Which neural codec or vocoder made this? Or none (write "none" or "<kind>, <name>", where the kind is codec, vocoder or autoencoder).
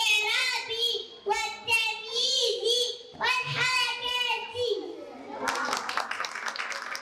none